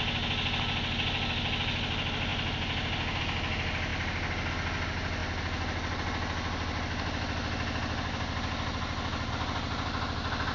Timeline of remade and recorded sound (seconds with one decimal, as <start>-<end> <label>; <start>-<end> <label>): 0.0-10.5 recorded